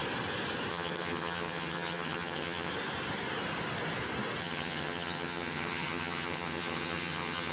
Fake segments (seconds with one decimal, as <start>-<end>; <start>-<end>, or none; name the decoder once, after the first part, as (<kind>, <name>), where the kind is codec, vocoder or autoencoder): 0.7-2.7 (vocoder, HiFi-GAN); 4.4-7.5